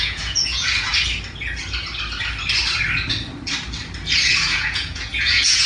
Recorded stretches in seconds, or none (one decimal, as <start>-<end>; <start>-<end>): 0.9-4.3